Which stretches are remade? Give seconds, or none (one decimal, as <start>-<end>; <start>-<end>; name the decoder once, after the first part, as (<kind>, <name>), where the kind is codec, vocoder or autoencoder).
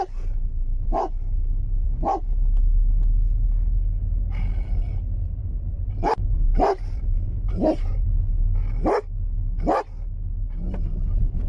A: 5.4-8.2 (vocoder, BigVGAN v2)